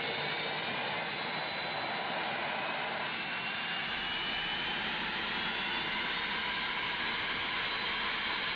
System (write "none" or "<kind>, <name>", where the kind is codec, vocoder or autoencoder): none